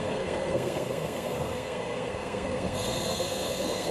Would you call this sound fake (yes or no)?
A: yes